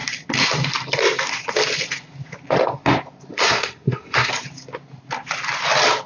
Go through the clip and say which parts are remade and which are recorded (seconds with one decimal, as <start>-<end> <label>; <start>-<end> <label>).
0.0-3.3 recorded; 3.3-4.3 remade; 4.3-6.1 recorded